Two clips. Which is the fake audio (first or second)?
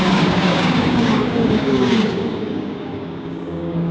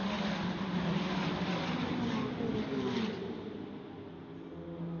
first